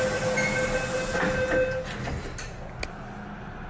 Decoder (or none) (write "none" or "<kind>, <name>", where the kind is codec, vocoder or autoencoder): none